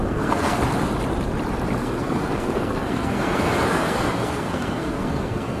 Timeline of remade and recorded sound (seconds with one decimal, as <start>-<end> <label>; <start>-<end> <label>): 0.0-0.6 remade; 0.6-1.8 recorded; 1.8-5.6 remade